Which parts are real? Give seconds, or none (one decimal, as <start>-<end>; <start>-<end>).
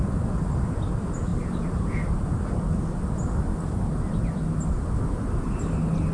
0.0-6.1